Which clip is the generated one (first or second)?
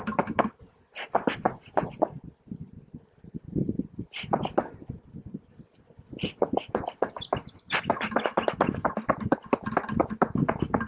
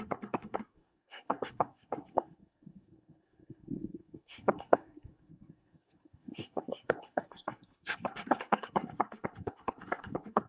second